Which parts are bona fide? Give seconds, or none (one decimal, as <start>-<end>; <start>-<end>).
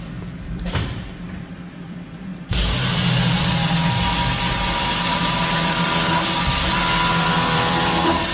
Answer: 2.3-7.1